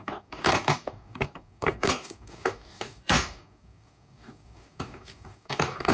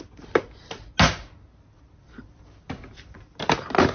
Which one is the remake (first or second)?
first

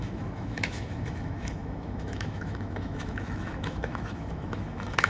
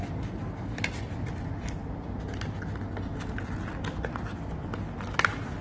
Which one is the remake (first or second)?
first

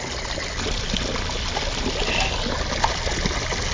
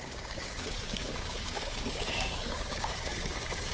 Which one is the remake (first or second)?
second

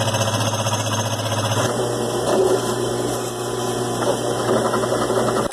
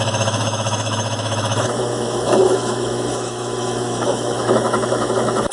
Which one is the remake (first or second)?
second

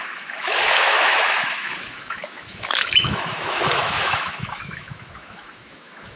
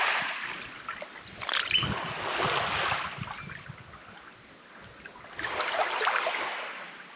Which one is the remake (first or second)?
first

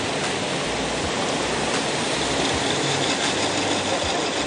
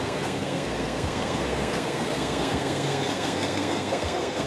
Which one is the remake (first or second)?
second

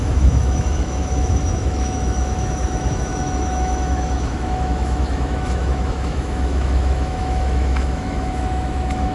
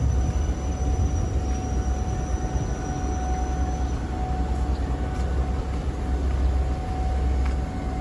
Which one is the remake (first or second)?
first